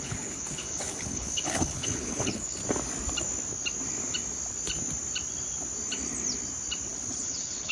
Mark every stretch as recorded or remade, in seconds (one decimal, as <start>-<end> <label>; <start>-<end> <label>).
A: 0.0-2.6 remade; 2.6-7.2 recorded; 7.2-7.7 remade